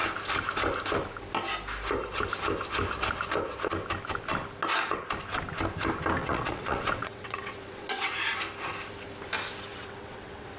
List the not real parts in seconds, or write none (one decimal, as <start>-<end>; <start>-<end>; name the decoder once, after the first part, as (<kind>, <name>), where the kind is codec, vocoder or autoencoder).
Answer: 6.2-8.1 (vocoder, WaveNeXt); 9.7-10.6